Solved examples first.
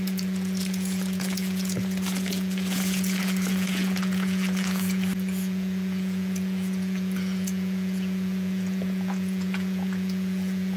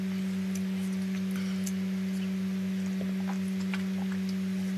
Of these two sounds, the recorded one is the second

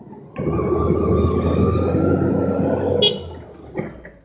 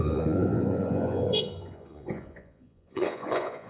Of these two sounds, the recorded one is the first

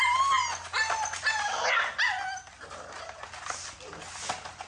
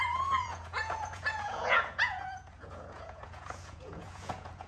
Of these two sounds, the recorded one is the first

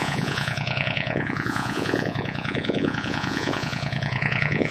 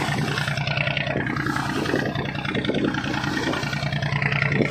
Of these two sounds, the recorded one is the second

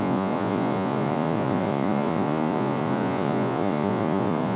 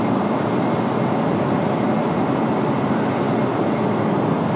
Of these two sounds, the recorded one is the second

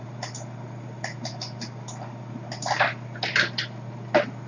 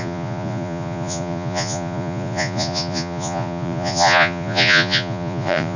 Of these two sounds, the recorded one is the first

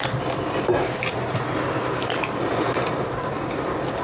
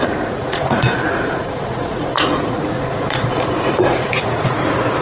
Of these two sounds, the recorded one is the first